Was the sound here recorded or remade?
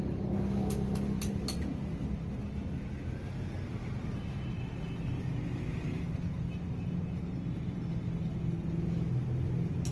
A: recorded